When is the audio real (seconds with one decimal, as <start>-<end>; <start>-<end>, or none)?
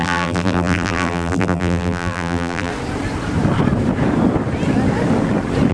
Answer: 2.7-5.7